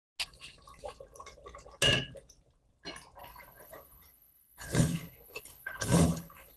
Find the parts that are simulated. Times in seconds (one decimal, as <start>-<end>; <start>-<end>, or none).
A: 3.2-6.6